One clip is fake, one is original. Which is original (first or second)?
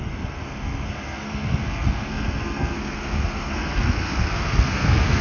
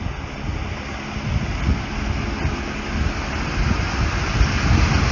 second